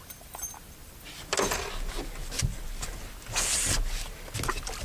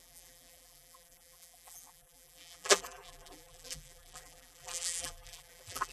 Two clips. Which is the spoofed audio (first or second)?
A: second